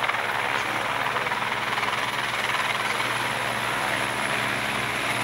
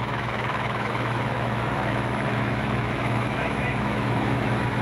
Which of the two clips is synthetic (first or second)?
second